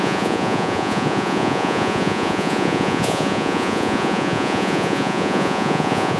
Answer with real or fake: fake